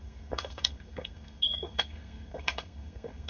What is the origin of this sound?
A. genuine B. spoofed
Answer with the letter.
B